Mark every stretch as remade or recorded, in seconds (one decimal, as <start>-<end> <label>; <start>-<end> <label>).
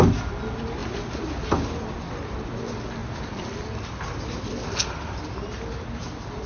0.0-3.0 recorded; 3.0-4.7 remade; 4.7-6.5 recorded